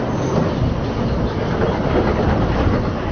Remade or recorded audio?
recorded